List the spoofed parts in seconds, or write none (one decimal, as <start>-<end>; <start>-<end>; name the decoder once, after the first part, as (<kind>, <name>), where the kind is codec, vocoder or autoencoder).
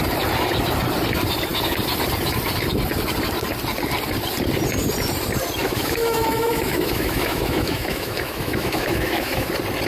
5.6-9.5 (autoencoder, DAC-VAE)